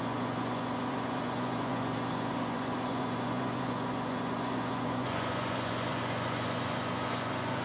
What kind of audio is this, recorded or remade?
remade